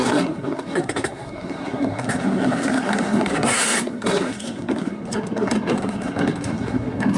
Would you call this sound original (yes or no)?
no